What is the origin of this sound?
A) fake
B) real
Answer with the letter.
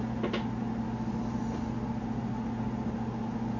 B